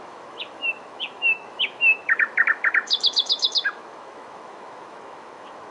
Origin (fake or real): fake